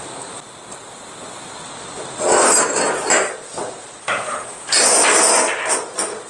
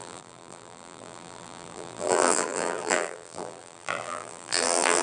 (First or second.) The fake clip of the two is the second